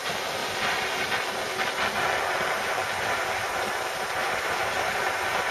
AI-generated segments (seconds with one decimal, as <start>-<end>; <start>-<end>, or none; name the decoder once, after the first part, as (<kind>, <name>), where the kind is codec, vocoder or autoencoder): none